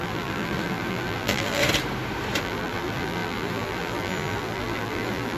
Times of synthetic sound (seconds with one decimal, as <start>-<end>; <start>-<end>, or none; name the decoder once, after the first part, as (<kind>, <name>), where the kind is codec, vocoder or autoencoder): 0.0-1.6 (vocoder, BigVGAN v2); 2.4-5.4